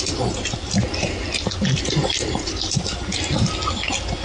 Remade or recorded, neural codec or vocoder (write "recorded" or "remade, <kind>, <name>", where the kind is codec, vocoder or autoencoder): recorded